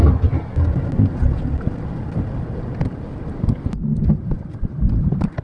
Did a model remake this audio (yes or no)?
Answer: no